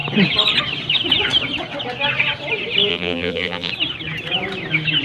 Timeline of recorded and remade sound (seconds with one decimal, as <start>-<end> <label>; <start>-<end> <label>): 0.0-2.9 recorded; 2.9-3.7 remade; 3.7-5.0 recorded